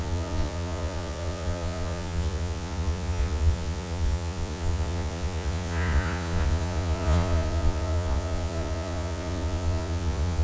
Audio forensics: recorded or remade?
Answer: remade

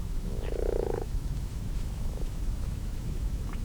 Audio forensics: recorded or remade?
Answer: remade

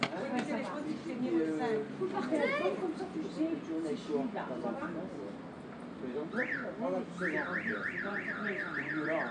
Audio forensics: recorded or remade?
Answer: recorded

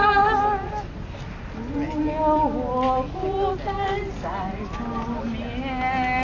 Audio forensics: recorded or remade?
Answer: recorded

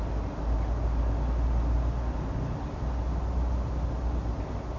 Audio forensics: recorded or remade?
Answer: recorded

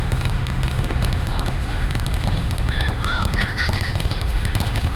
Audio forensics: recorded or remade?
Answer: remade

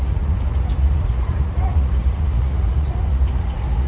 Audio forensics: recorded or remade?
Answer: remade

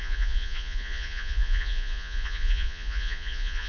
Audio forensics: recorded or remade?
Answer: remade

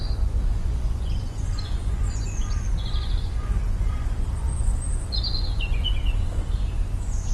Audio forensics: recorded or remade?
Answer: remade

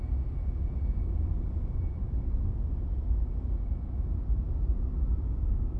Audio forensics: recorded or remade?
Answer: recorded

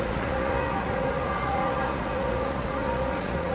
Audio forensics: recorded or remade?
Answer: remade